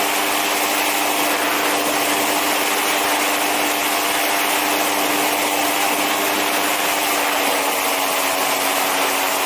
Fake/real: real